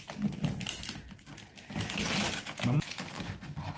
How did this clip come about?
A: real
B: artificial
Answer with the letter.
A